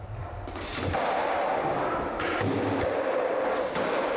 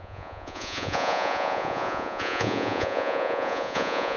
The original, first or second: first